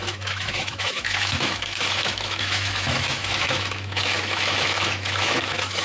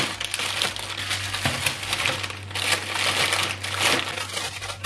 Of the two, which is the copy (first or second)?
first